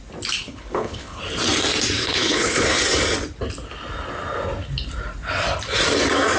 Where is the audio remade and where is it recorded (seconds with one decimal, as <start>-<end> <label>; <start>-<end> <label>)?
0.0-0.4 recorded; 0.4-1.2 remade; 1.2-2.0 recorded; 2.0-2.8 remade; 2.8-6.4 recorded